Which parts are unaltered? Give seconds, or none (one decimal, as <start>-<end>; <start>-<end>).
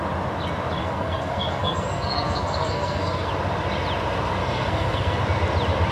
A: 0.0-0.8; 3.3-4.4; 5.2-5.9